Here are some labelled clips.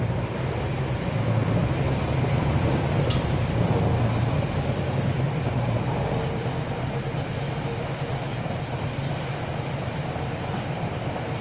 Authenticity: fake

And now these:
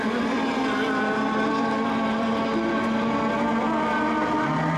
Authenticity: real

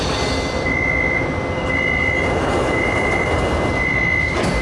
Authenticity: real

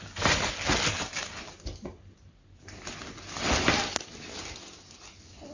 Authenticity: real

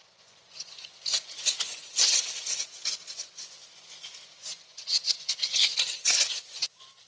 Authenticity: fake